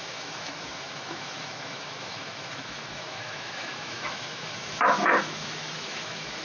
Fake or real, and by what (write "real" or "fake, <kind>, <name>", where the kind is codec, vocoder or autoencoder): fake, autoencoder, DAC-VAE